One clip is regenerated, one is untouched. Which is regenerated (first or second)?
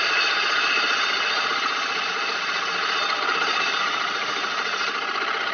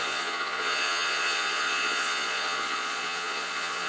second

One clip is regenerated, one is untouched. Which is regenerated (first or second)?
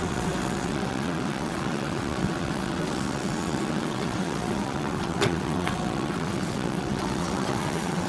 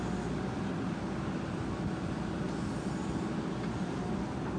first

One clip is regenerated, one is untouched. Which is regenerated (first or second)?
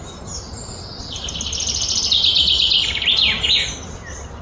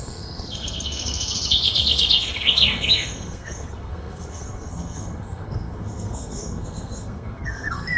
second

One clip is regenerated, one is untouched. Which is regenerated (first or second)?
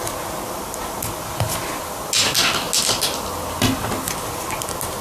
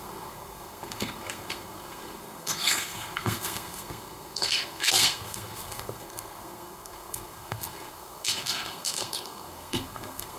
second